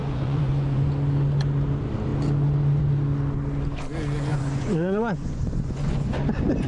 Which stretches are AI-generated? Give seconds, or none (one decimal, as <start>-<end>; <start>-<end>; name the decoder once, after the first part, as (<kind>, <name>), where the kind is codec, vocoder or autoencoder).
0.0-0.9 (vocoder, Vocos); 4.3-6.7